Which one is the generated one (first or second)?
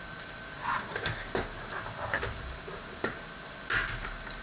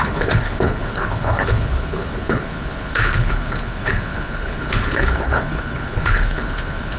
second